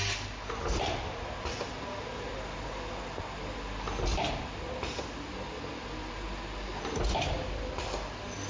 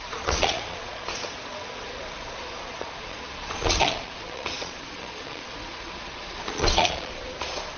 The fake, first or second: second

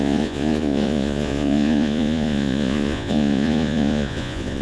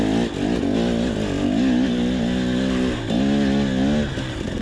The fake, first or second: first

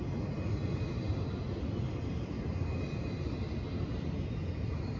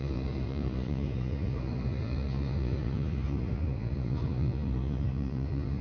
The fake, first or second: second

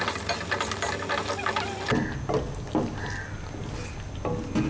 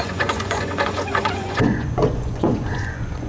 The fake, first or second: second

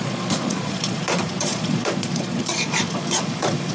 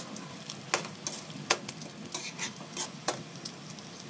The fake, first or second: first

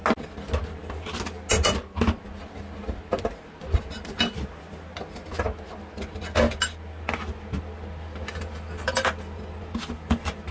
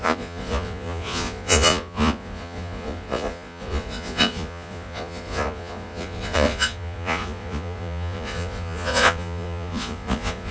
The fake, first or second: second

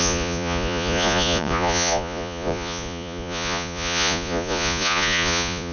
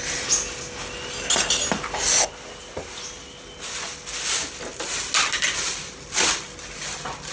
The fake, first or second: first